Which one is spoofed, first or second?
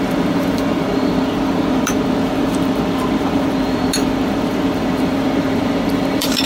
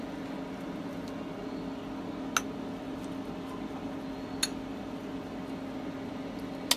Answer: first